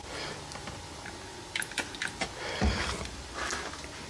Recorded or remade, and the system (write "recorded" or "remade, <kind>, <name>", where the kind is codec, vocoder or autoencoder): recorded